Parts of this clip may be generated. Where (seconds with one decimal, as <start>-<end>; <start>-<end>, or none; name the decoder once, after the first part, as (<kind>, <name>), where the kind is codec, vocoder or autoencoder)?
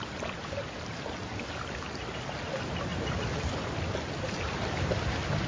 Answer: none